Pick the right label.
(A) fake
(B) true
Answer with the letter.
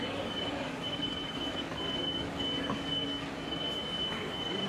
A